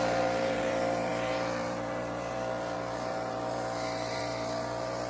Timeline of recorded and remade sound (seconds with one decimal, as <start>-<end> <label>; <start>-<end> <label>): 0.0-5.1 remade